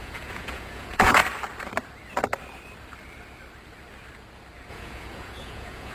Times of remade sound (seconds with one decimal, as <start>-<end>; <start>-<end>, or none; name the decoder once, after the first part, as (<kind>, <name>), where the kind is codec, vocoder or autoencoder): 0.0-1.2 (vocoder, Vocos); 4.7-5.9